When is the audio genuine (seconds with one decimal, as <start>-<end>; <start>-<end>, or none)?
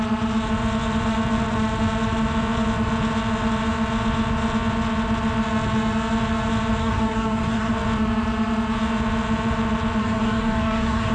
0.0-6.8; 7.7-10.0